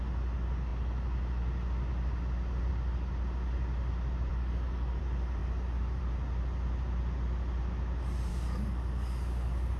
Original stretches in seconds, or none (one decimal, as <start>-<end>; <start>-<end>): 0.0-4.3; 5.0-8.3